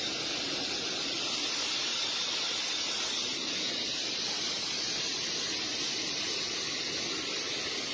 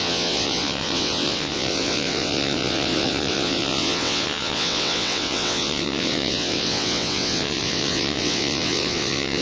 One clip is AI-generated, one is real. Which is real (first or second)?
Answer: first